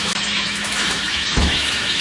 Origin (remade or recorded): remade